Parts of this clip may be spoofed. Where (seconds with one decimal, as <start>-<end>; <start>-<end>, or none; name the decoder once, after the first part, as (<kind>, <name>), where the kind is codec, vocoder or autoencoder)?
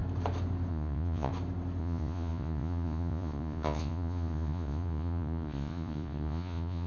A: 0.7-1.3 (vocoder, Vocos); 1.8-6.9